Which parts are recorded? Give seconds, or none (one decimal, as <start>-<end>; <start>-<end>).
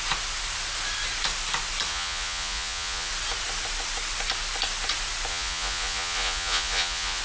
0.0-1.9; 3.1-5.3